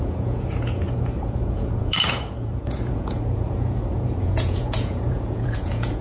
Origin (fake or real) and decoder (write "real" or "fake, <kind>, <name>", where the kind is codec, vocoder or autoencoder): fake, vocoder, Vocos